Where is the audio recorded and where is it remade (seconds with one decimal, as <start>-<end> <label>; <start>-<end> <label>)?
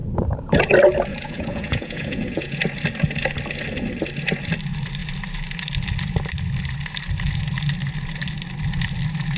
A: 0.0-0.6 remade; 0.6-1.1 recorded; 1.1-2.6 remade; 2.6-9.4 recorded